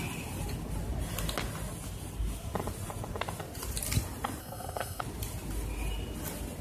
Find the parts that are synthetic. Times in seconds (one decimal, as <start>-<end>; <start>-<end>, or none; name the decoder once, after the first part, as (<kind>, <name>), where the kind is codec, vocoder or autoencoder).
4.4-5.0 (codec, SNAC)